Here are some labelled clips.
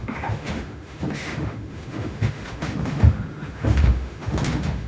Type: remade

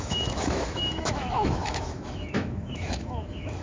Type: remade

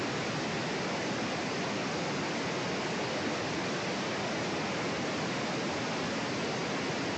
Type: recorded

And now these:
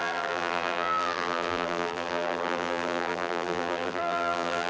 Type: remade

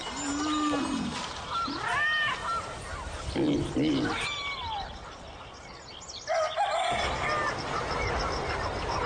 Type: recorded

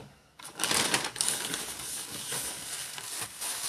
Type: remade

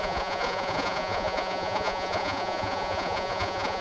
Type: remade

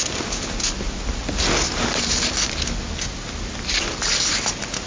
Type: recorded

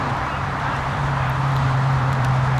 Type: remade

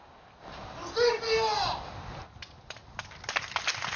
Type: recorded